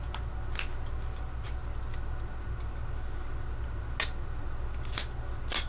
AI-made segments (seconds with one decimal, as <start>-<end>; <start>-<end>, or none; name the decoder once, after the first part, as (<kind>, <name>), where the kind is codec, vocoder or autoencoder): none